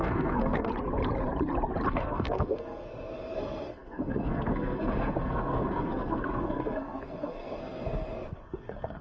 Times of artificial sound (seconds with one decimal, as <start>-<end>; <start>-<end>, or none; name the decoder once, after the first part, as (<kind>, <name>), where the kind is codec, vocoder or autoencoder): 0.0-0.7 (codec, SNAC); 1.9-9.0